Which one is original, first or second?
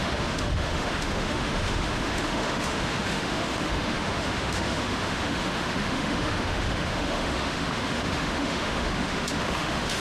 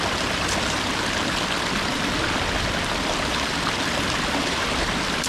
second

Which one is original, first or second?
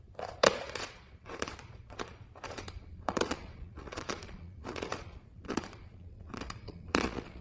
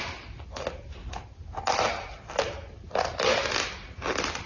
second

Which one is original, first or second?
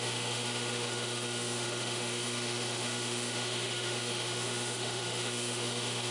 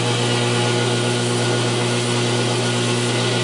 second